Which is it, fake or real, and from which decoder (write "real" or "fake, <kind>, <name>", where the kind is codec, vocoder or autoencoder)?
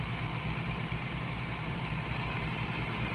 fake, vocoder, BigVGAN v2